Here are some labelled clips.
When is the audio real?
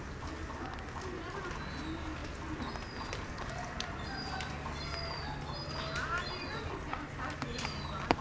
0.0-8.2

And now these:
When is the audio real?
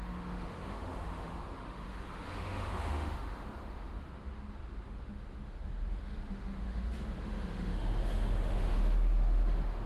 none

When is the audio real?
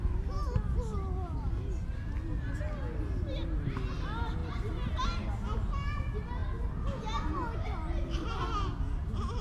0.0-9.4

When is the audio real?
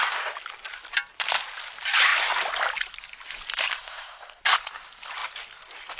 0.0-3.7; 4.4-6.0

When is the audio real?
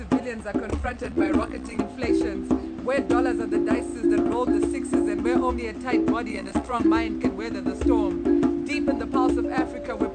0.0-0.7; 1.8-6.3; 6.8-10.1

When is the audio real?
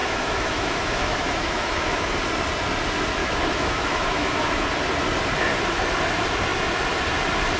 2.2-3.2; 4.7-7.6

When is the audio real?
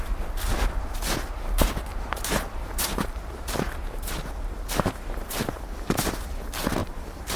0.0-1.9; 6.3-6.8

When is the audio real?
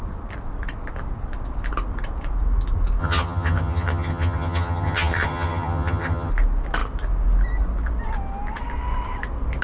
0.0-3.0; 6.3-9.6